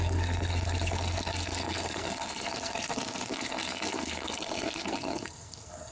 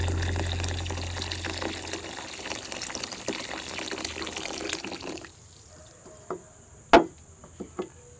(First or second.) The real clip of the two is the second